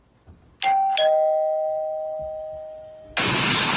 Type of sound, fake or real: real